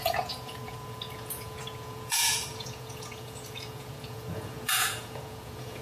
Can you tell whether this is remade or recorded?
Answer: remade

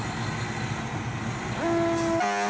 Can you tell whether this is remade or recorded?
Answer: recorded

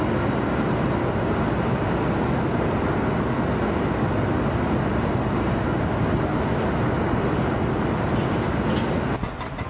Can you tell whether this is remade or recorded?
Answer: recorded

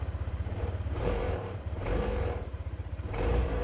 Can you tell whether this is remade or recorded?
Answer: remade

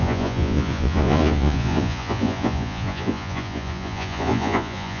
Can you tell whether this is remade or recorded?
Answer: remade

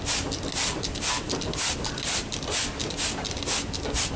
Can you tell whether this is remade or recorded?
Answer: recorded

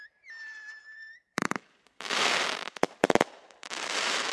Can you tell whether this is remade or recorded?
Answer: remade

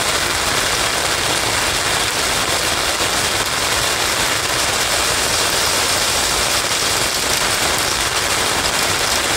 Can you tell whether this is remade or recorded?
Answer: recorded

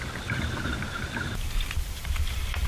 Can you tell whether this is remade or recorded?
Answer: remade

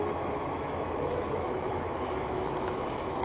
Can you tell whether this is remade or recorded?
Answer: remade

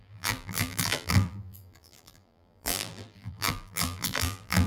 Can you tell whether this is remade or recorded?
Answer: remade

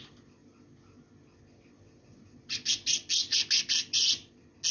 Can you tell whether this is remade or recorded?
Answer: recorded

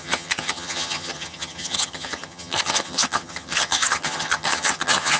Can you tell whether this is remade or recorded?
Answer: remade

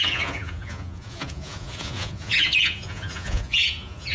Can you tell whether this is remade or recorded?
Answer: remade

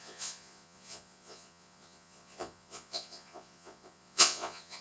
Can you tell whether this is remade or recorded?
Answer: remade